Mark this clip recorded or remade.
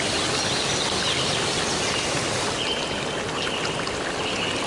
recorded